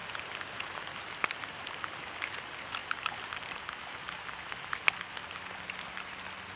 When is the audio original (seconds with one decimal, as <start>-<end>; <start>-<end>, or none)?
0.0-6.6